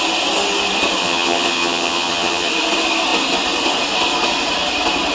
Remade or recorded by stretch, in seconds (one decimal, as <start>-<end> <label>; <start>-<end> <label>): 0.0-1.0 recorded; 1.0-2.5 remade; 2.5-5.1 recorded